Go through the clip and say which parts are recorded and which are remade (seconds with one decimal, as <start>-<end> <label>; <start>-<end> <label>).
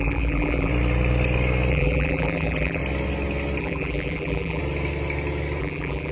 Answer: 0.0-0.7 remade; 0.7-1.7 recorded; 1.7-2.8 remade; 2.8-3.6 recorded; 3.6-4.6 remade; 4.6-5.6 recorded; 5.6-6.1 remade